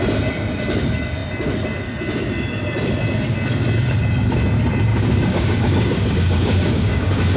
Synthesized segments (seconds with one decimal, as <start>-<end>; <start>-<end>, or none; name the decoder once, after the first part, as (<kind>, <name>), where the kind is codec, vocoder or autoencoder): 4.9-7.4 (codec, DAC)